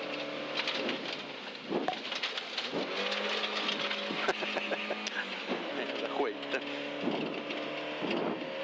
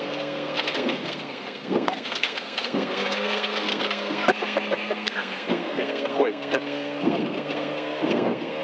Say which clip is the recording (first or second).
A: first